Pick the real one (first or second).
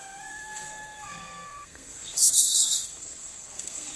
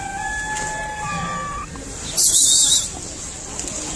second